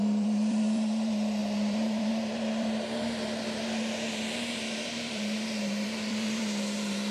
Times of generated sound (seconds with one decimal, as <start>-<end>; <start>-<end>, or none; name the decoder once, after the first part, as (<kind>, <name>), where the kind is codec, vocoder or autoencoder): 0.0-7.1 (vocoder, BigVGAN v2)